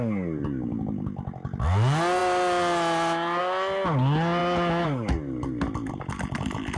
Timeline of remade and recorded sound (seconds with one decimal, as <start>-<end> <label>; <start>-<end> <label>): 0.0-6.8 recorded